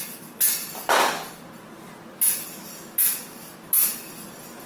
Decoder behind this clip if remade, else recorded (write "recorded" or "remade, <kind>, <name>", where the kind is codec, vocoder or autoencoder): recorded